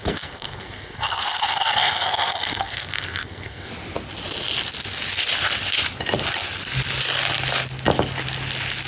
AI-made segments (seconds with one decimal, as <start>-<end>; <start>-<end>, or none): 0.0-3.7